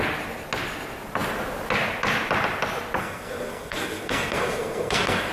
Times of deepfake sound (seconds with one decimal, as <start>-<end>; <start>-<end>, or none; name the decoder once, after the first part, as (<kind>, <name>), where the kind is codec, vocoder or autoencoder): 3.0-5.3 (codec, SNAC)